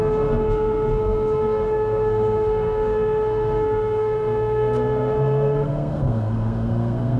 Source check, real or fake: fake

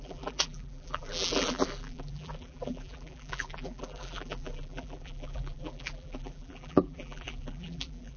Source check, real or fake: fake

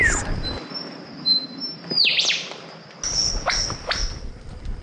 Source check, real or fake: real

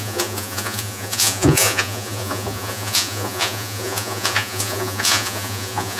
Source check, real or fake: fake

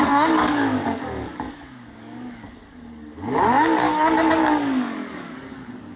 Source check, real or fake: fake